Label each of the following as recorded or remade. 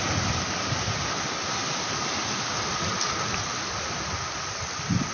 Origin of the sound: recorded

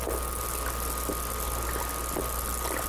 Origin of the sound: recorded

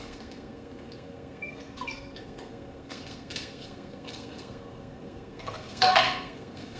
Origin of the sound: remade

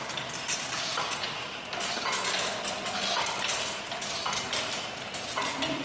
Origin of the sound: recorded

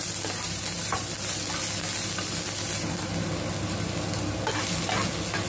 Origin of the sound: recorded